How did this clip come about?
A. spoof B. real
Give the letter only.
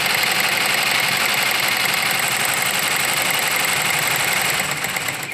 B